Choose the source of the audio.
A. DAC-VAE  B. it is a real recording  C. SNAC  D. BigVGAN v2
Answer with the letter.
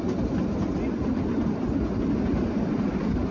B